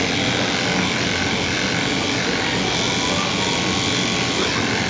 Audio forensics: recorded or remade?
recorded